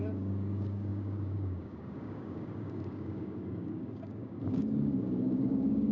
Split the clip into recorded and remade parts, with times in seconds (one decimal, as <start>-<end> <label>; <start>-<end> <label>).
0.0-5.9 remade